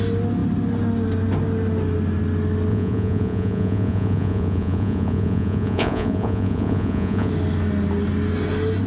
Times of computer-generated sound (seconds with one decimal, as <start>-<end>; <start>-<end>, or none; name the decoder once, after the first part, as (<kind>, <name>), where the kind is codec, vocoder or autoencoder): 2.7-7.3 (vocoder, Vocos)